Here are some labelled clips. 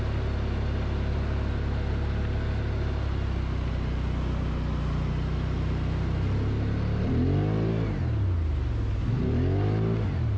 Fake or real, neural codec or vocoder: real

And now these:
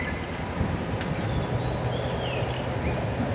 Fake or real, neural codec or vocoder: real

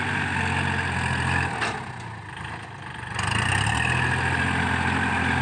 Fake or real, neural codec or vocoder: real